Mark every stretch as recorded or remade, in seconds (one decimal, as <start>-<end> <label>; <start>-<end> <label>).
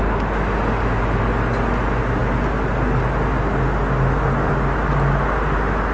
0.0-5.9 recorded